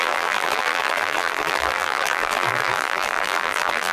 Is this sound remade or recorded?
remade